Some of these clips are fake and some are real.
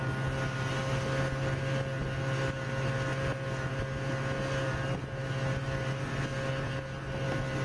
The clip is real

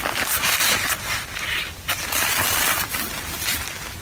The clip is real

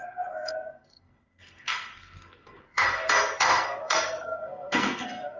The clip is fake